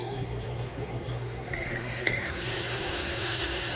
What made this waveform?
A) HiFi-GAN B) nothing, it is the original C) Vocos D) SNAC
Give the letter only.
D